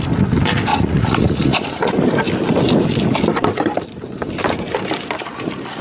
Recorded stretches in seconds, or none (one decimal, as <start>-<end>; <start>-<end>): 0.0-0.7; 1.9-5.8